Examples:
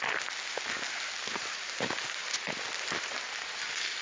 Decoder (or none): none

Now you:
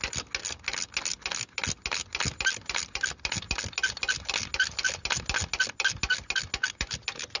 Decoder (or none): none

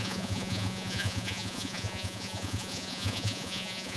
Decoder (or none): vocoder, Vocos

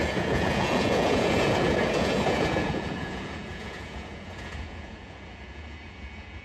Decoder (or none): vocoder, Vocos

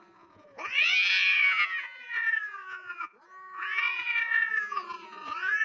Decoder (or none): vocoder, Vocos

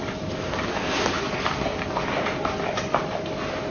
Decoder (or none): none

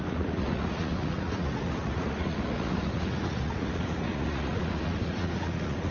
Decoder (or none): vocoder, Vocos